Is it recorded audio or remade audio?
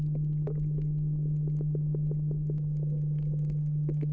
recorded